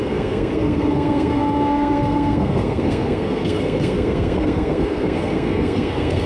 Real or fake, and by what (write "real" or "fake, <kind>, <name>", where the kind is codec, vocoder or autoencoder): fake, codec, SNAC